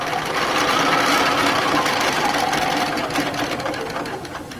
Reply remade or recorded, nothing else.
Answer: recorded